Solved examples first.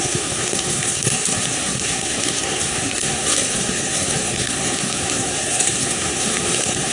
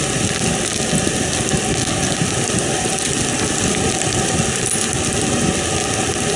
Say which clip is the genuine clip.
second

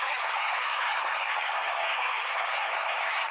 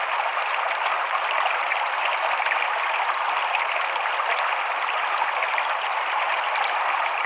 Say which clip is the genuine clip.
second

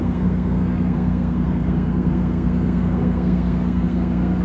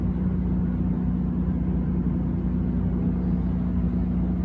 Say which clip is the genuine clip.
second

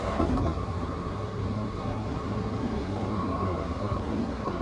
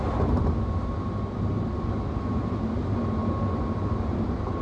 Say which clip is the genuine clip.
second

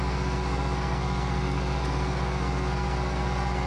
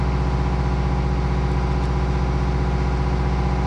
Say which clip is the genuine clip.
second